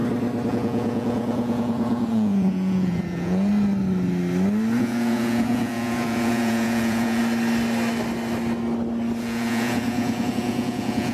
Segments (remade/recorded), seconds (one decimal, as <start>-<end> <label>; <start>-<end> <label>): 0.0-0.5 recorded; 0.5-3.5 remade; 3.5-4.8 recorded; 4.8-7.2 remade; 7.2-9.2 recorded; 9.2-11.1 remade